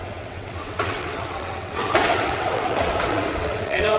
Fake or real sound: fake